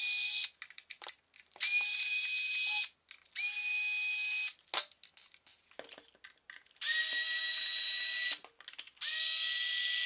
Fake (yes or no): no